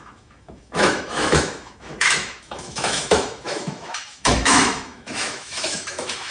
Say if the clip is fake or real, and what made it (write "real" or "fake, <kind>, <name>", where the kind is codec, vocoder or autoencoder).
fake, autoencoder, DAC-VAE